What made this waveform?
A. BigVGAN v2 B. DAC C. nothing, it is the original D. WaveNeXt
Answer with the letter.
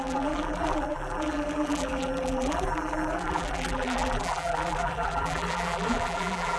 A